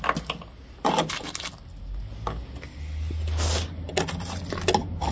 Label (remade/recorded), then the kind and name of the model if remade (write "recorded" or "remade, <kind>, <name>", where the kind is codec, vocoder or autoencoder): recorded